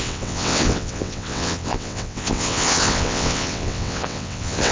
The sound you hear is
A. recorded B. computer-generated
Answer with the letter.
B